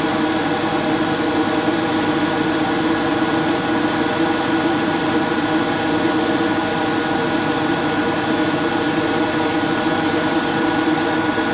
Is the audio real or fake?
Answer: real